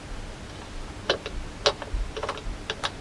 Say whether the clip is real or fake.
real